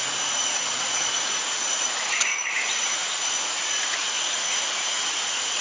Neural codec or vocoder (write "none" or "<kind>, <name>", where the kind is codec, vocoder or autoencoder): vocoder, Vocos